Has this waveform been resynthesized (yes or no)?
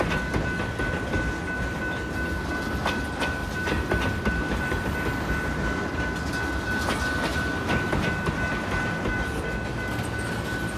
no